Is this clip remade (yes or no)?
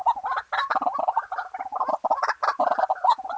yes